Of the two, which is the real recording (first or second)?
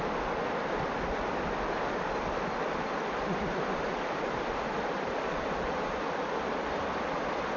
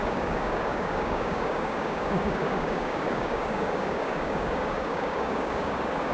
first